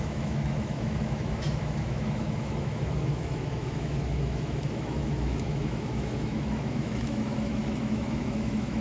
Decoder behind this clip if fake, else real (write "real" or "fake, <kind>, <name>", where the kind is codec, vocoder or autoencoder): fake, autoencoder, DAC-VAE